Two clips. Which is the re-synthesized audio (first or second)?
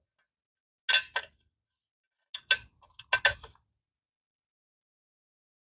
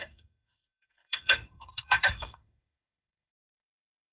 second